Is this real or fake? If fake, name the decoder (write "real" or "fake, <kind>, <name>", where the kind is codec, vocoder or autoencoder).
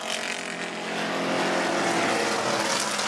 real